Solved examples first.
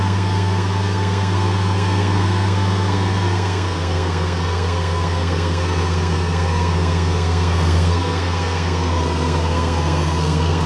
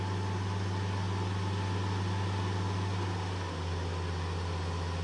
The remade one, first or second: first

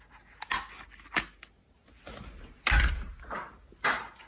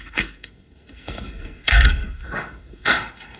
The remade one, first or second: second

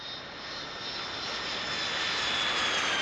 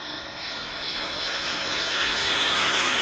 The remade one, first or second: second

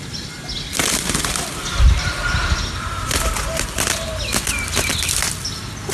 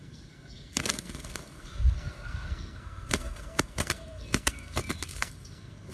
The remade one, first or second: second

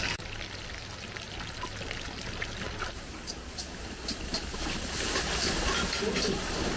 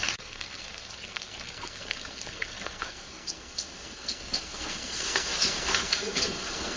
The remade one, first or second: second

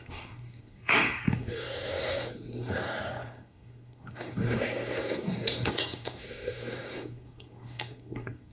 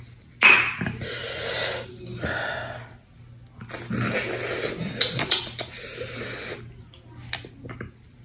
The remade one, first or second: first